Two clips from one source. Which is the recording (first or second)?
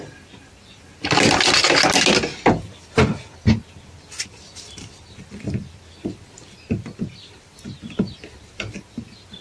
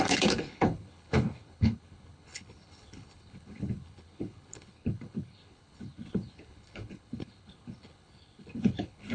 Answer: first